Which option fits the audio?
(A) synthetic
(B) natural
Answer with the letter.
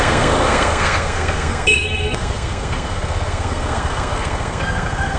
A